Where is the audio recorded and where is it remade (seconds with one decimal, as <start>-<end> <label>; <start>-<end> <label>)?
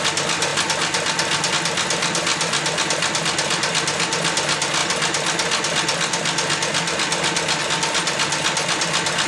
0.0-9.3 recorded